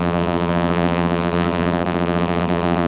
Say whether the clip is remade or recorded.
remade